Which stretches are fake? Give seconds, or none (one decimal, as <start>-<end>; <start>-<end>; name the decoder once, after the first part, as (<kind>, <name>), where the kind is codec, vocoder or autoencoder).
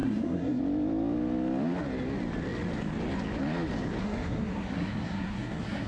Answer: 0.0-0.6 (codec, SNAC); 4.0-5.9